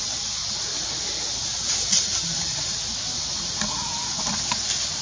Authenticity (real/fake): real